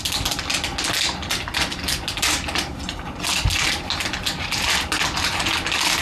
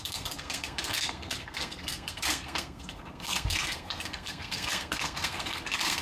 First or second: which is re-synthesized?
second